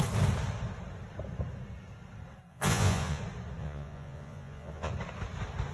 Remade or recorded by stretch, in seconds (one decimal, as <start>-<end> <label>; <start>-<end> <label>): 0.0-2.5 recorded; 2.5-3.2 remade; 3.2-3.6 recorded; 3.6-4.9 remade; 4.9-5.7 recorded

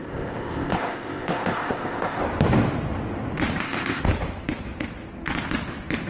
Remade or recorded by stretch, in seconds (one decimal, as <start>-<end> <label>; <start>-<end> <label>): 0.0-2.2 remade; 2.2-3.6 recorded; 3.6-4.0 remade; 4.0-6.1 recorded

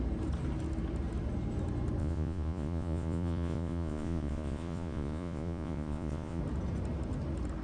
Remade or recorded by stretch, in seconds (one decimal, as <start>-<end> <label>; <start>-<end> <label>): 0.0-2.0 recorded; 2.0-6.4 remade; 6.4-7.6 recorded

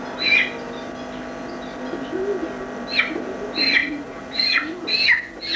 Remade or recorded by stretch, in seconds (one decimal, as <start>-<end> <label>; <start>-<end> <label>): 0.0-3.8 recorded; 3.8-4.6 remade; 4.6-5.6 recorded